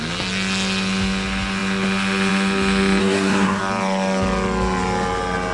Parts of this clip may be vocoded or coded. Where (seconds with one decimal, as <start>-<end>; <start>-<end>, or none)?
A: 3.0-3.6